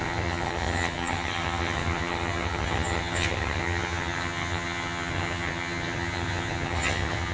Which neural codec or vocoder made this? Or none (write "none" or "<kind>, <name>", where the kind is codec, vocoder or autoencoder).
vocoder, HiFi-GAN